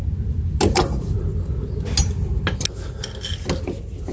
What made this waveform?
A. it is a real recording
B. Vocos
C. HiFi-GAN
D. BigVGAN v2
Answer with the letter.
A